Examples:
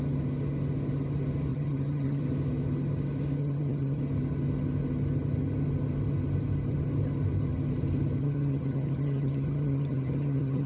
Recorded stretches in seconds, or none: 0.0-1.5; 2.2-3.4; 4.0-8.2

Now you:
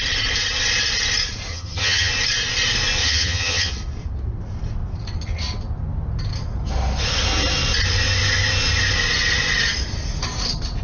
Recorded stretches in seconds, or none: 0.0-1.5; 2.1-3.0; 3.7-10.8

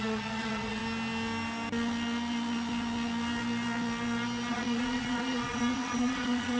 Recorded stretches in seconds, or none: 0.8-4.5

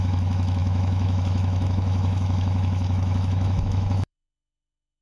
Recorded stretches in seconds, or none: none